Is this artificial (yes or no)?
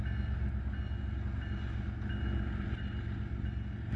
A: no